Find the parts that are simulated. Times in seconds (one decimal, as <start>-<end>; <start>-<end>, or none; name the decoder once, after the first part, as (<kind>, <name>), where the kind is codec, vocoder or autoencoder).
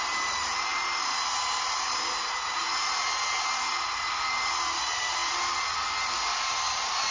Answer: none